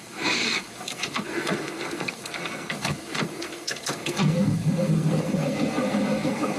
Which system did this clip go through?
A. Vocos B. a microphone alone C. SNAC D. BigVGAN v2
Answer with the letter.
C